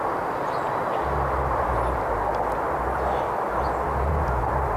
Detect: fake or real real